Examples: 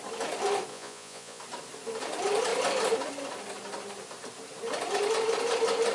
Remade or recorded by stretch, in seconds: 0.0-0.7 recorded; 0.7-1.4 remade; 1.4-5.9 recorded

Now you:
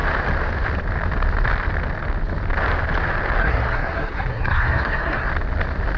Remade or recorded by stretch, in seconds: 0.0-3.4 recorded; 3.4-5.3 remade; 5.3-6.0 recorded